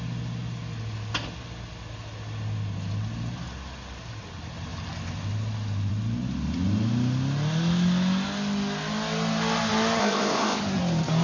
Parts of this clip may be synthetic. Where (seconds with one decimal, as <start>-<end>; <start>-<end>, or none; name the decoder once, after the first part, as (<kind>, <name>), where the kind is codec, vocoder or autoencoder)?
10.0-10.6 (codec, ZipCodec)